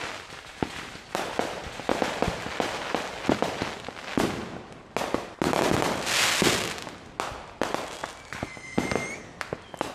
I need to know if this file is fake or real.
real